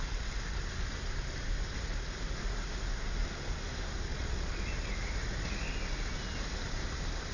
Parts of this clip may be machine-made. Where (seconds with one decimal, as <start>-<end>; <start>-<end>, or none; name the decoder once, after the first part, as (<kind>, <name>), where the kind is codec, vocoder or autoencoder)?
4.1-4.7 (vocoder, Vocos)